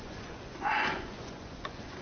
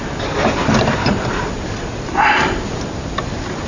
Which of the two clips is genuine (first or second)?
second